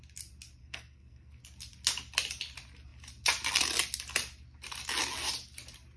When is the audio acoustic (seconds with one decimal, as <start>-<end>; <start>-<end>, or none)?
0.0-0.6; 1.4-6.0